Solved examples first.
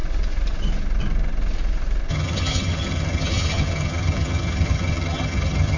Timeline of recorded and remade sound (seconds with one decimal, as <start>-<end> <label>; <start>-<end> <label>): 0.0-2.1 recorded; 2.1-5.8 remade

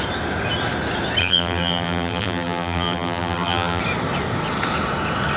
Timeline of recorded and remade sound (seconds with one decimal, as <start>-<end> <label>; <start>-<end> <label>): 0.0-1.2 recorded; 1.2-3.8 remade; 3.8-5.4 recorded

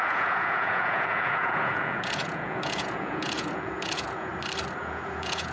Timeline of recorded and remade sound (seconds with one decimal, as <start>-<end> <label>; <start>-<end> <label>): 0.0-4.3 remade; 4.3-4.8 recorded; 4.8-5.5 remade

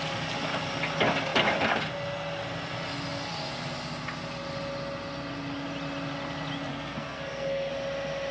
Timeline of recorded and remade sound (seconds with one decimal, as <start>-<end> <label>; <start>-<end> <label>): 0.0-6.7 recorded; 6.7-7.7 remade; 7.7-8.3 recorded

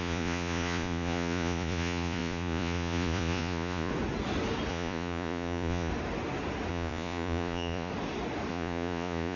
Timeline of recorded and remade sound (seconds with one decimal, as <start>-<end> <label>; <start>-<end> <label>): 0.0-3.9 remade; 3.9-4.7 recorded; 4.7-5.9 remade; 5.9-6.7 recorded; 6.7-7.9 remade; 7.9-8.5 recorded; 8.5-9.4 remade

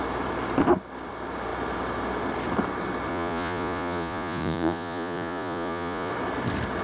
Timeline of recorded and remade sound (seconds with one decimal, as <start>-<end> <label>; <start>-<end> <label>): 0.0-3.1 recorded; 3.1-6.1 remade; 6.1-6.8 recorded